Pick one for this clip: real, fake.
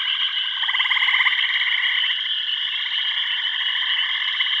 real